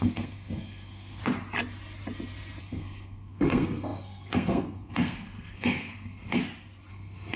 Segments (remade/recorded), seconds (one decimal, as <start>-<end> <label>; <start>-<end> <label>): 0.0-1.2 remade; 1.2-2.6 recorded; 2.6-6.4 remade; 6.4-6.9 recorded; 6.9-7.4 remade